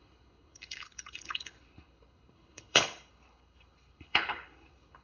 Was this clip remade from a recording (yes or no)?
yes